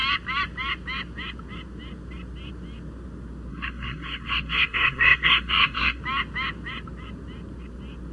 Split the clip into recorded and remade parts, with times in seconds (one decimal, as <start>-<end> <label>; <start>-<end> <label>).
0.0-3.5 recorded; 3.5-6.0 remade; 6.0-8.1 recorded